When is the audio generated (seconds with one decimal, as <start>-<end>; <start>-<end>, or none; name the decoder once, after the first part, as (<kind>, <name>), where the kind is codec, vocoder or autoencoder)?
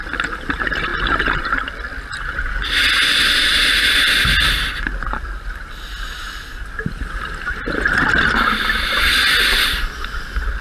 none